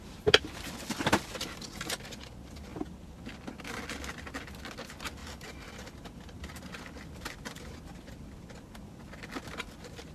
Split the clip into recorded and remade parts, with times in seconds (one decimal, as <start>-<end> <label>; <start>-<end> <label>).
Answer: 0.0-5.2 recorded; 5.2-7.1 remade; 7.1-10.1 recorded